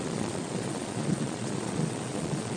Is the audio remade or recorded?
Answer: remade